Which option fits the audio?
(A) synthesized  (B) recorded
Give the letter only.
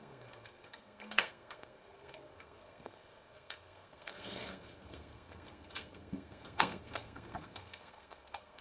A